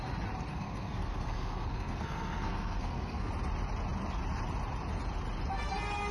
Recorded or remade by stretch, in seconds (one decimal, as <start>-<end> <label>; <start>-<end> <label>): 0.0-0.5 recorded; 0.5-3.3 remade; 3.3-6.1 recorded